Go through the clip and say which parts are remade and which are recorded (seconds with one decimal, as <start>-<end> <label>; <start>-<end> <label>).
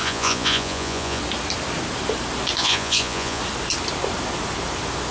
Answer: 0.0-1.2 remade; 1.2-2.6 recorded; 2.6-3.4 remade; 3.4-5.1 recorded